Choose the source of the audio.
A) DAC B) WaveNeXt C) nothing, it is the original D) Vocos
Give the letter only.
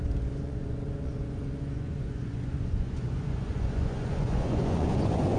D